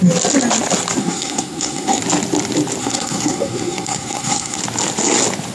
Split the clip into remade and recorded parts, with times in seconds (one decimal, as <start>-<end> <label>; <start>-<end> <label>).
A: 0.0-1.0 recorded; 1.0-2.0 remade; 2.0-2.8 recorded; 2.8-4.6 remade; 4.6-5.5 recorded